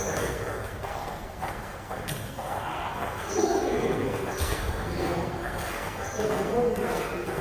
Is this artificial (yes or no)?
yes